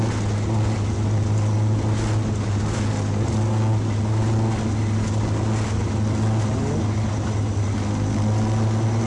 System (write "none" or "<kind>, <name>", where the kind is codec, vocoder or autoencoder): none